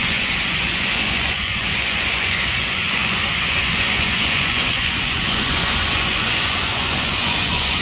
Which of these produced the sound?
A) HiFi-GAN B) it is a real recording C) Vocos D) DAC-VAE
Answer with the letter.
C